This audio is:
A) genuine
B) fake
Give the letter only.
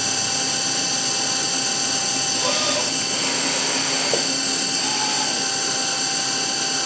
A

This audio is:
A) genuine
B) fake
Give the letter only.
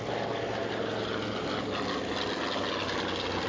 A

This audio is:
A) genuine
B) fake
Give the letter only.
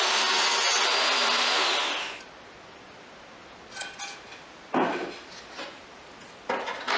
A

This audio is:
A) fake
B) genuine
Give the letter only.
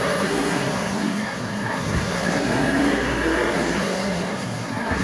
A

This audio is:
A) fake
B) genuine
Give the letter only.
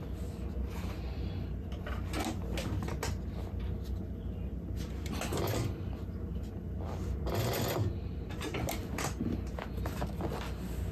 B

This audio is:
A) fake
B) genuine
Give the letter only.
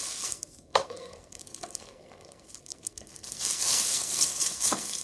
A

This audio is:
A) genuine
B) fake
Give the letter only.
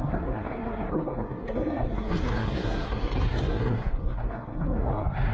B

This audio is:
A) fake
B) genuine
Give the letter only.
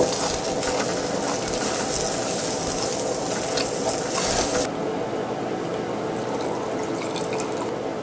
B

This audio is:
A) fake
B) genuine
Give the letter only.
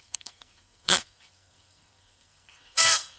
A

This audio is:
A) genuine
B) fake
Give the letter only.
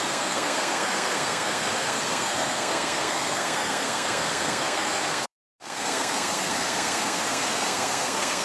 B